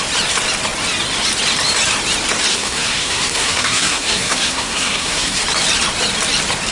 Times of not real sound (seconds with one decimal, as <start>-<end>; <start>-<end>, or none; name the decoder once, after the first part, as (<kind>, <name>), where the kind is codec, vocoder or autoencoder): 2.5-5.4 (codec, SNAC)